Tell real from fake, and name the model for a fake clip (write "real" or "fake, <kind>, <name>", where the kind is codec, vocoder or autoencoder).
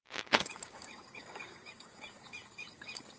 fake, codec, DAC